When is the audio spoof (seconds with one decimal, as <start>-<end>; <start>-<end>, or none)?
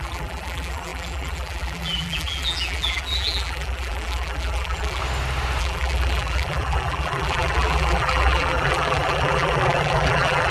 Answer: 0.0-5.0; 5.6-10.5